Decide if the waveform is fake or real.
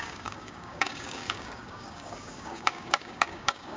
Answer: fake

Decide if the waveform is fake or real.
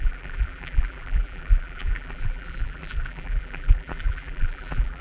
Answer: fake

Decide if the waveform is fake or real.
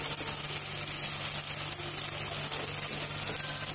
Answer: real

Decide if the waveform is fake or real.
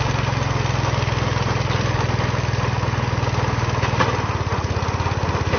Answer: real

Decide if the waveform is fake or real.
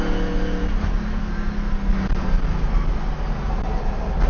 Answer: real